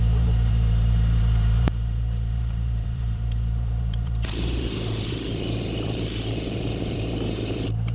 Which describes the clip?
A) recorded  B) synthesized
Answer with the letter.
B